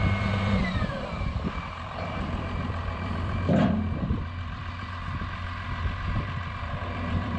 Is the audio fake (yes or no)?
yes